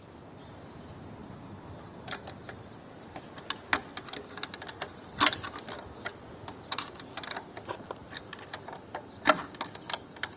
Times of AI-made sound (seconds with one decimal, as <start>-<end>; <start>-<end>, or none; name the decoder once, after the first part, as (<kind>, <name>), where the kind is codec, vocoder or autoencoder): 1.2-3.2 (vocoder, BigVGAN v2)